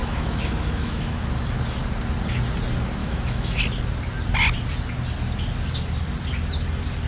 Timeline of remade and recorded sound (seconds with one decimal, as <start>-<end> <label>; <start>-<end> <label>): 0.0-1.2 remade; 1.2-3.0 recorded; 3.0-3.6 remade; 3.6-7.1 recorded